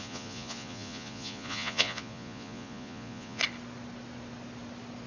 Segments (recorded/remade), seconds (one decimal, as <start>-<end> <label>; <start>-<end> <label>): 0.0-3.4 remade; 3.4-5.1 recorded